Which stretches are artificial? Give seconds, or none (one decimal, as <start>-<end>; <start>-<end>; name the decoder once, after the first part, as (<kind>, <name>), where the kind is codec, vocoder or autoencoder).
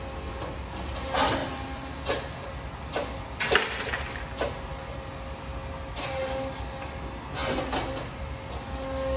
none